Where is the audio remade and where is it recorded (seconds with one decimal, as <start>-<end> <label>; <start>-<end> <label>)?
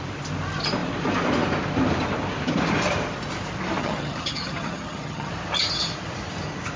0.0-3.8 recorded; 3.8-5.3 remade; 5.3-6.8 recorded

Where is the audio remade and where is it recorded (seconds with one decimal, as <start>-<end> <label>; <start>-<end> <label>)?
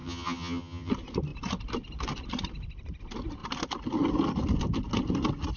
0.0-0.9 remade; 0.9-5.6 recorded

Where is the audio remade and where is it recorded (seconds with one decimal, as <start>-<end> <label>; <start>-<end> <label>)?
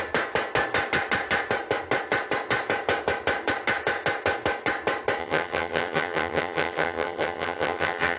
0.0-5.2 recorded; 5.2-8.2 remade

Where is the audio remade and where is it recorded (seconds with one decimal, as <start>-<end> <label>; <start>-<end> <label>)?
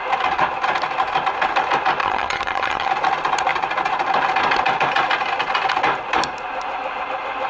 0.0-2.0 recorded; 2.0-2.9 remade; 2.9-7.5 recorded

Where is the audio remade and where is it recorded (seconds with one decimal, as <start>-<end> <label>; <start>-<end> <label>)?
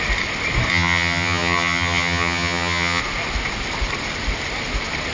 0.0-0.7 recorded; 0.7-3.0 remade; 3.0-5.1 recorded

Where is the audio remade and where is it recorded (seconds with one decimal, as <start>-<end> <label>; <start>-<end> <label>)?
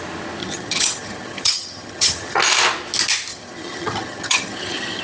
0.0-0.4 recorded; 0.4-2.4 remade; 2.4-3.3 recorded; 3.3-5.0 remade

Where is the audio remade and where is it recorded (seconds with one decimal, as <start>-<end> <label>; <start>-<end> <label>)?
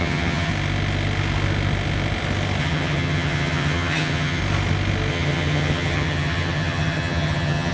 0.0-0.5 remade; 0.5-2.6 recorded; 2.6-4.4 remade; 4.4-5.1 recorded; 5.1-7.7 remade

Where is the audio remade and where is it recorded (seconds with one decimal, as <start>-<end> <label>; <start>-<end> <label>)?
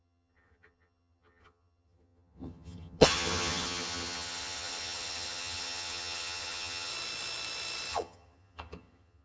0.0-6.9 remade; 6.9-7.9 recorded; 7.9-9.2 remade